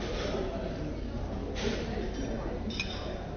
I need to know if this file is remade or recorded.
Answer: recorded